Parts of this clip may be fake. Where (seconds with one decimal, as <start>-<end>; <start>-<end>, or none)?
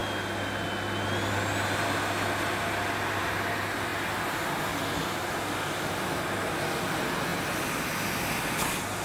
none